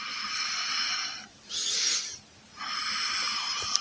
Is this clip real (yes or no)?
yes